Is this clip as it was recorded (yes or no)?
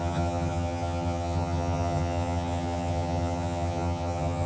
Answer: no